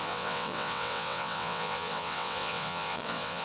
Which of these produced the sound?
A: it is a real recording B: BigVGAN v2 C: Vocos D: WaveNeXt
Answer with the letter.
D